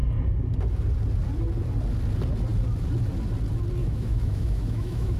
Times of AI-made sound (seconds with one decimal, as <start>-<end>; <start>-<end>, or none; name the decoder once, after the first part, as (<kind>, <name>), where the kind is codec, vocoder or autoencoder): 3.8-5.2 (autoencoder, DAC-VAE)